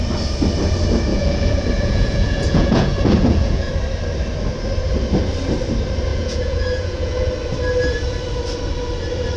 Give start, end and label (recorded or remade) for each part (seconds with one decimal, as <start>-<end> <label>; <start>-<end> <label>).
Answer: 0.0-1.1 recorded; 1.1-3.7 remade; 3.7-6.1 recorded; 6.1-7.3 remade; 7.3-9.4 recorded